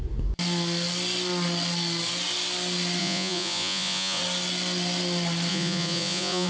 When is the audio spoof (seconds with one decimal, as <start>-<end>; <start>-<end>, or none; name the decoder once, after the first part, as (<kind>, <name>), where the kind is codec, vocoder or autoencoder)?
3.0-4.2 (vocoder, Vocos); 5.5-6.5